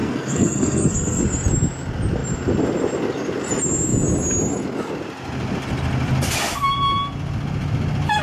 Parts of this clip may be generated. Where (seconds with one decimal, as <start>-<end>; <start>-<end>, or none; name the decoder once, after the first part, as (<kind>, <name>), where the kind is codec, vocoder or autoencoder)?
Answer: 0.0-1.2 (codec, SNAC)